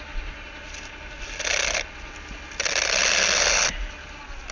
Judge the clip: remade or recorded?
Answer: recorded